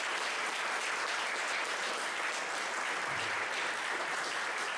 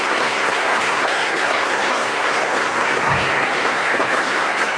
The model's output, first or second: second